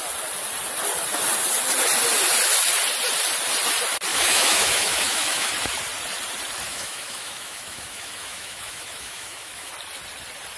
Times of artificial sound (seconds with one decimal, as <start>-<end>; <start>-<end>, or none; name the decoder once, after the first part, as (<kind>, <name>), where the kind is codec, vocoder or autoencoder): 4.1-5.5 (autoencoder, DAC-VAE); 6.7-9.7